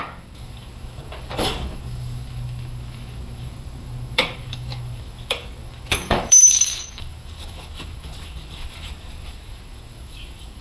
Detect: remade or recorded remade